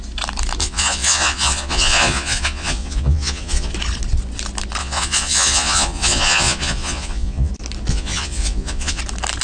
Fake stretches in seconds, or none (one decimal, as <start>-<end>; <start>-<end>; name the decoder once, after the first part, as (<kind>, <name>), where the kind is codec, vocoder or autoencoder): 0.6-3.7 (vocoder, Vocos); 4.8-7.5; 7.9-9.0

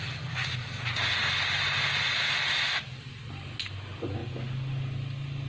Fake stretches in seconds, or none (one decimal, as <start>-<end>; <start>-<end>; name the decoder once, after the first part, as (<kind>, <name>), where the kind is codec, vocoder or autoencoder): none

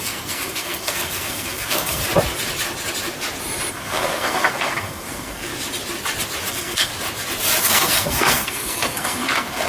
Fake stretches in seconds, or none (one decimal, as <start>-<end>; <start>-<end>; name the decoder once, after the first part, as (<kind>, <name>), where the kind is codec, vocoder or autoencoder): 0.0-2.0 (codec, SNAC); 3.7-5.5; 6.5-6.9; 7.6-9.7

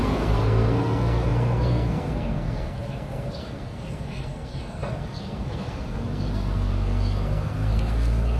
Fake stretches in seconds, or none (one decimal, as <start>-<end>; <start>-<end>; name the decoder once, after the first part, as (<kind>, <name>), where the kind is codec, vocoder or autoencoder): 0.0-8.4 (codec, SNAC)

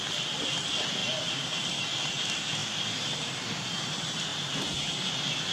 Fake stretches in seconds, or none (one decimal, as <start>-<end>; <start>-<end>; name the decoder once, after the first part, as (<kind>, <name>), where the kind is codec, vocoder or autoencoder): 1.0-1.9 (vocoder, BigVGAN v2)

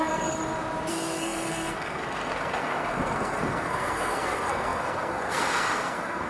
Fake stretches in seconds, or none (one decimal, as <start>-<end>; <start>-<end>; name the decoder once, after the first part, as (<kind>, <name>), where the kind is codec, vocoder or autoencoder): 0.0-0.4 (codec, SNAC); 0.9-6.3

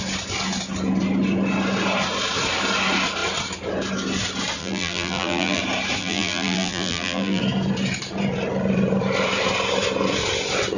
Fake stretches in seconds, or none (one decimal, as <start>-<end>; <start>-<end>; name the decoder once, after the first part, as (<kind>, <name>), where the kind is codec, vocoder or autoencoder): 4.6-5.6 (vocoder, BigVGAN v2); 6.0-7.4

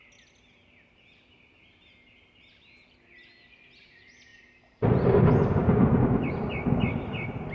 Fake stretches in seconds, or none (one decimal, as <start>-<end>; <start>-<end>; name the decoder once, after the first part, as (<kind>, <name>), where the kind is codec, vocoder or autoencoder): none